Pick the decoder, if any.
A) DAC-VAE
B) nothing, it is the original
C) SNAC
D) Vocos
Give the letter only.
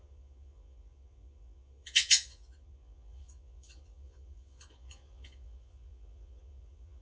D